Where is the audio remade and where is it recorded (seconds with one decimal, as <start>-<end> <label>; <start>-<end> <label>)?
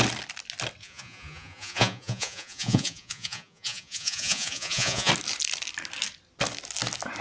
0.0-0.8 recorded; 0.8-5.1 remade; 5.1-7.2 recorded